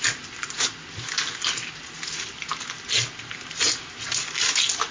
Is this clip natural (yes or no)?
yes